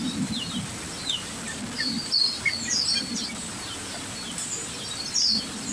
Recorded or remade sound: recorded